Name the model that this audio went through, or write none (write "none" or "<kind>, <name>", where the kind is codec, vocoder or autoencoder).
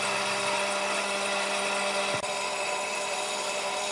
vocoder, BigVGAN v2